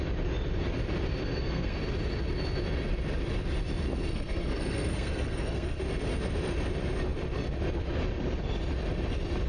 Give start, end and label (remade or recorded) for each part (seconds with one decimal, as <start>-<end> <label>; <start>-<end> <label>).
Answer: 0.0-1.2 recorded; 1.2-1.8 remade; 1.8-4.1 recorded; 4.1-5.8 remade; 5.8-9.5 recorded